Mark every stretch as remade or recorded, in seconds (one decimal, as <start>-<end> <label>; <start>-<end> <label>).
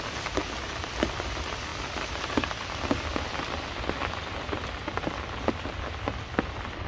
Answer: 0.0-6.9 recorded